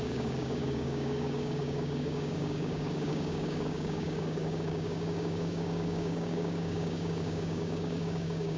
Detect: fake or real fake